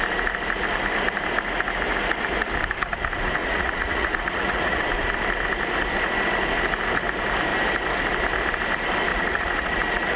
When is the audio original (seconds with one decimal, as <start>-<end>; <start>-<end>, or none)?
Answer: 0.0-3.4; 4.8-9.1